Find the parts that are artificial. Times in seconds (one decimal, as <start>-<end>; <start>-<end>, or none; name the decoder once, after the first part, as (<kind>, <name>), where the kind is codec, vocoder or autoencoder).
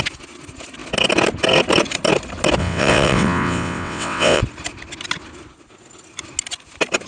2.6-4.4 (vocoder, WaveNeXt)